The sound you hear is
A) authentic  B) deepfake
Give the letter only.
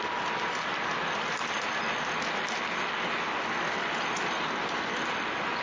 A